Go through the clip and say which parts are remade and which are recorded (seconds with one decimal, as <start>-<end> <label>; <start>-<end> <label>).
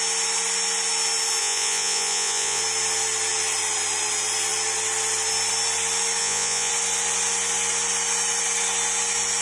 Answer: 0.0-1.4 recorded; 1.4-2.6 remade; 2.6-6.2 recorded; 6.2-6.7 remade; 6.7-9.4 recorded